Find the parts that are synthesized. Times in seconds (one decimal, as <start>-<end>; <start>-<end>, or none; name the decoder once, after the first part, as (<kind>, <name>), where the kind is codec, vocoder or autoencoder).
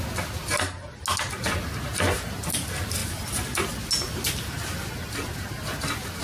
3.0-3.7 (vocoder, BigVGAN v2)